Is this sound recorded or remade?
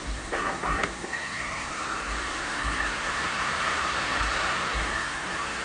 remade